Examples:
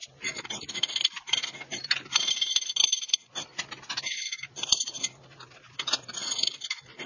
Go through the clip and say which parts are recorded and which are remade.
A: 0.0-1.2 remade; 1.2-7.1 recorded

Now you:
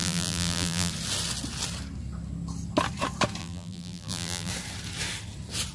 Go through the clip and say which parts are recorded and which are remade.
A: 0.0-0.9 remade; 0.9-3.4 recorded; 3.4-4.5 remade; 4.5-5.7 recorded

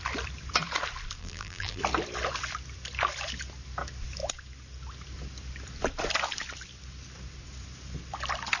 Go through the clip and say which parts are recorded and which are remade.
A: 0.0-1.2 recorded; 1.2-1.8 remade; 1.8-8.6 recorded

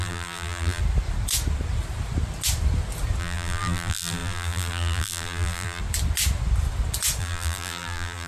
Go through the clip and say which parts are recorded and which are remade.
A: 0.0-0.8 remade; 0.8-3.2 recorded; 3.2-5.8 remade; 5.8-7.2 recorded; 7.2-8.3 remade

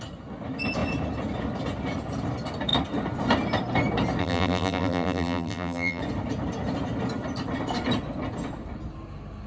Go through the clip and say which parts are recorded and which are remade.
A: 0.0-4.2 recorded; 4.2-6.0 remade; 6.0-9.5 recorded

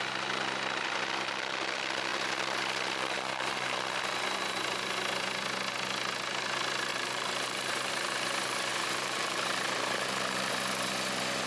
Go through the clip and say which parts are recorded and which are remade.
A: 0.0-2.1 recorded; 2.1-4.0 remade; 4.0-6.9 recorded; 6.9-7.9 remade; 7.9-8.7 recorded; 8.7-10.5 remade; 10.5-11.5 recorded